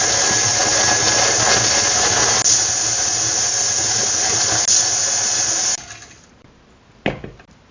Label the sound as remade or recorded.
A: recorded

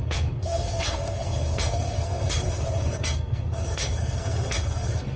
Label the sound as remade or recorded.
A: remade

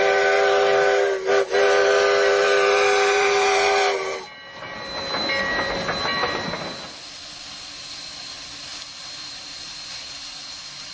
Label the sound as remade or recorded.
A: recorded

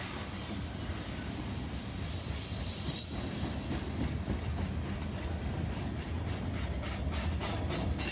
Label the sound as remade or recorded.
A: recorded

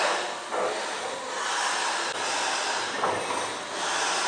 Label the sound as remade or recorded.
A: recorded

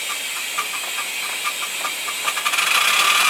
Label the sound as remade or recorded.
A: recorded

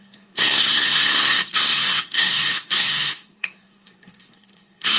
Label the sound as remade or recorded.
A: remade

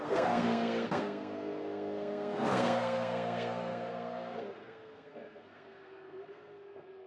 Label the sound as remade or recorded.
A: remade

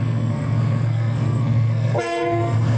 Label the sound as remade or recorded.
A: remade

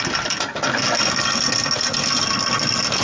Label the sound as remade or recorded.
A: recorded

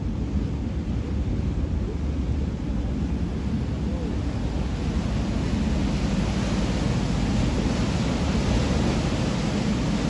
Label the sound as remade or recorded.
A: recorded